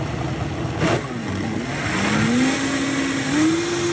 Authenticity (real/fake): real